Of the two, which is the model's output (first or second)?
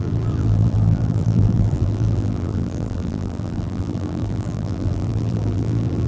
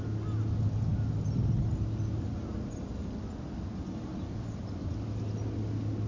first